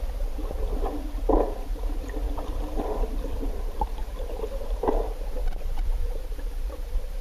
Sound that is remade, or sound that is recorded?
remade